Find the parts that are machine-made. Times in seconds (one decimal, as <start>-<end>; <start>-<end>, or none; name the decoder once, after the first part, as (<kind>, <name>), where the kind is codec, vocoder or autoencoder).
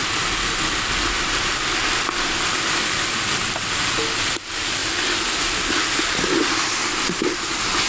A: none